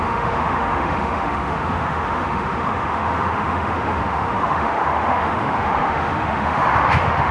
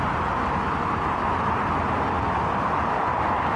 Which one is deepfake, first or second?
first